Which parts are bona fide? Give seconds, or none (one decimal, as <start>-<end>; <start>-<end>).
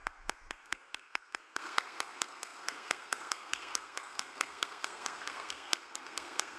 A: none